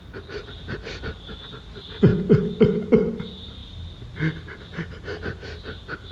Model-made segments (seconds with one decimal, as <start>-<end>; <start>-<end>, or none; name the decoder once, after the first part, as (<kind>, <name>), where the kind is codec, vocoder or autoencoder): 0.4-1.0 (vocoder, BigVGAN v2)

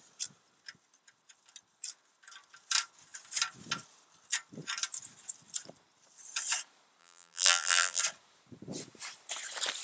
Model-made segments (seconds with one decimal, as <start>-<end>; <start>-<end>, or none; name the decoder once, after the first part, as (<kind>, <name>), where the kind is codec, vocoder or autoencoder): 7.0-8.0 (vocoder, BigVGAN v2)

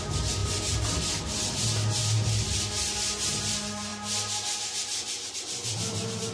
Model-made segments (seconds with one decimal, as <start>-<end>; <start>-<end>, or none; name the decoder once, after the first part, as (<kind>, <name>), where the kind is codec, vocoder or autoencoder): none

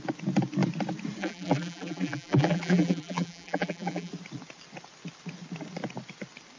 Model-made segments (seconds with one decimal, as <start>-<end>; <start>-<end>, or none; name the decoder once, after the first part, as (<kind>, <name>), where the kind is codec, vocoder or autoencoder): 1.2-4.1 (vocoder, BigVGAN v2)

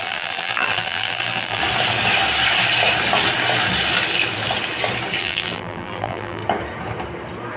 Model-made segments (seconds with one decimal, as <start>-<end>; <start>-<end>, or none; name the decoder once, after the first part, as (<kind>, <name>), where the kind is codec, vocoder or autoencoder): 0.0-1.6 (vocoder, BigVGAN v2); 5.2-6.4

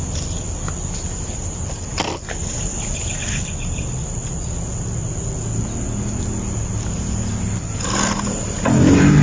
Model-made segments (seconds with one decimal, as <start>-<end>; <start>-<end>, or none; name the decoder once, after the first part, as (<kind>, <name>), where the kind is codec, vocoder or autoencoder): none

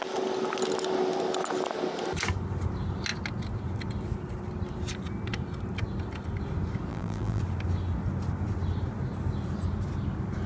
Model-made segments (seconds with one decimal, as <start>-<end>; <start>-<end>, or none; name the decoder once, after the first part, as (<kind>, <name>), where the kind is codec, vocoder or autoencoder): 6.9-7.4 (vocoder, BigVGAN v2)